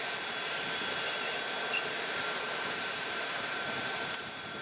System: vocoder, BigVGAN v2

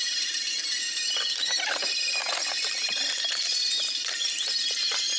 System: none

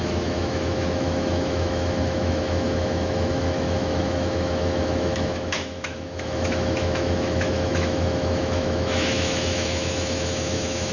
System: autoencoder, DAC-VAE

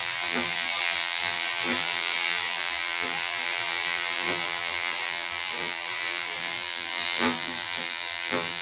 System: vocoder, BigVGAN v2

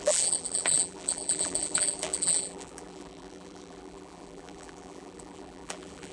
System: vocoder, BigVGAN v2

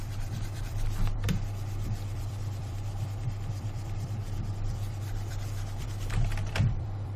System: vocoder, BigVGAN v2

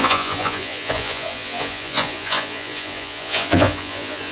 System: vocoder, Vocos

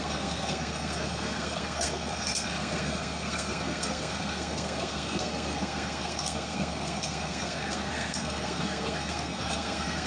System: codec, SNAC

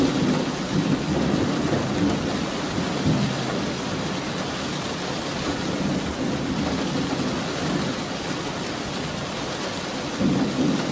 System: none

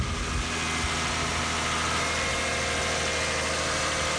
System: none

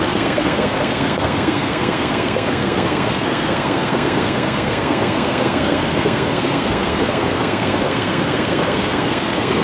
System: codec, SNAC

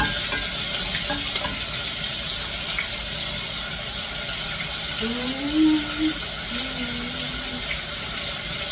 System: none